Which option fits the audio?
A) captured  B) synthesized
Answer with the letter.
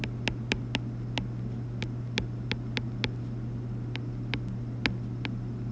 A